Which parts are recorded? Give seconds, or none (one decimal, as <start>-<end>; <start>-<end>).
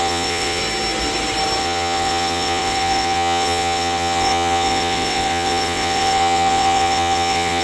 0.6-1.6